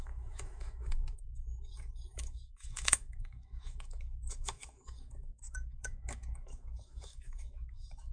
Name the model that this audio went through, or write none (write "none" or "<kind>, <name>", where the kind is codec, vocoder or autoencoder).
autoencoder, DAC-VAE